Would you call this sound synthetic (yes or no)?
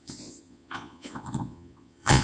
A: yes